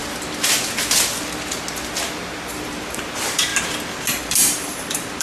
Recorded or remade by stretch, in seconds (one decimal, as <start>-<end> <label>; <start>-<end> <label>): 0.0-2.3 recorded; 2.3-3.5 remade; 3.5-4.2 recorded; 4.2-5.2 remade